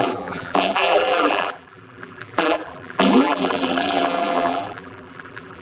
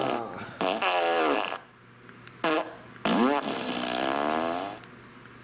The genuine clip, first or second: second